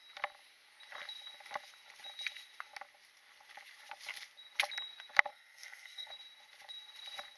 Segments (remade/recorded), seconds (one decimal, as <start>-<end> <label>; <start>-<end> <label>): 0.0-5.3 recorded; 5.3-6.1 remade; 6.1-7.4 recorded